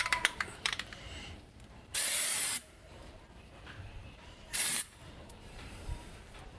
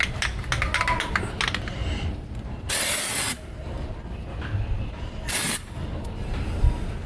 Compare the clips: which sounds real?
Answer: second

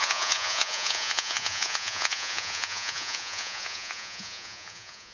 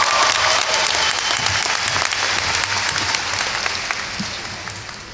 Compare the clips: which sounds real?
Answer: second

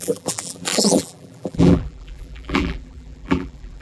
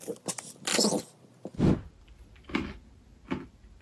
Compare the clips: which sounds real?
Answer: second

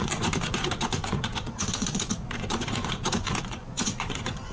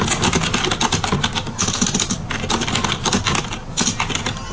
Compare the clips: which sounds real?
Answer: second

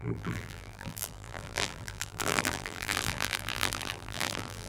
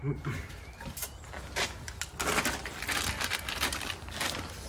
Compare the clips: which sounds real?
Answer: second